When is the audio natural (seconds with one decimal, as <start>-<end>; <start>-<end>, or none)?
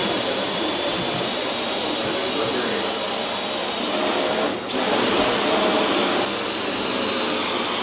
2.1-7.8